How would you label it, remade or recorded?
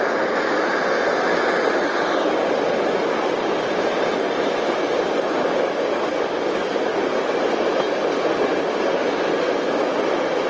recorded